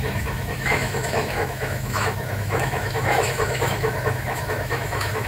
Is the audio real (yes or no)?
no